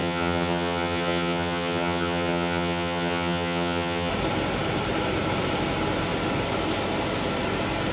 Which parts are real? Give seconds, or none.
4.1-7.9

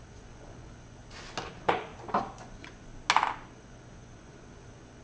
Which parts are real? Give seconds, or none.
1.0-1.5; 1.9-2.4; 2.9-3.5

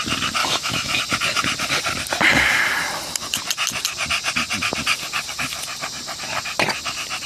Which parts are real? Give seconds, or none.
0.0-0.4; 1.0-7.3

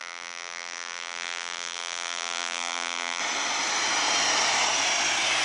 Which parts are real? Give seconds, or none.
3.2-5.4

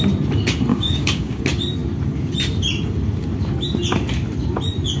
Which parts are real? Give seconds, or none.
0.0-0.7; 1.4-5.0